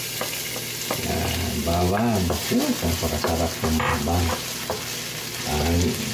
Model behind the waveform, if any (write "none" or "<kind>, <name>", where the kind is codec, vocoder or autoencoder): none